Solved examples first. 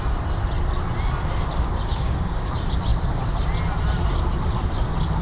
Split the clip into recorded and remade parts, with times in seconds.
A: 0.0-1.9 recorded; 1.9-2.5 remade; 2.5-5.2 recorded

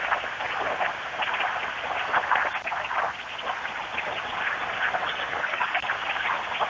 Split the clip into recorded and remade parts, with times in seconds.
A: 0.0-5.0 recorded; 5.0-5.9 remade; 5.9-6.7 recorded

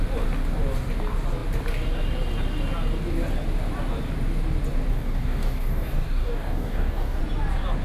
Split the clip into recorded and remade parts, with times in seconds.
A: 0.0-4.9 recorded; 4.9-7.2 remade; 7.2-7.8 recorded